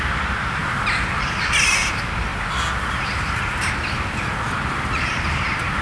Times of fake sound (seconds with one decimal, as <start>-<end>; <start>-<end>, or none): 0.0-0.6; 1.7-2.3; 4.6-5.8